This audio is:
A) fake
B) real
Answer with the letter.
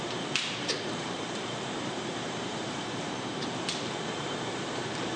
A